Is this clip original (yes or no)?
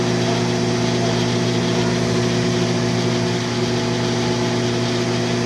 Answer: yes